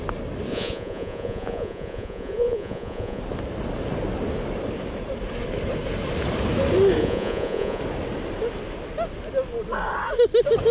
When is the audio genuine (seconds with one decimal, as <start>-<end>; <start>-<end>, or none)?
0.0-0.5; 3.2-7.0; 7.8-10.7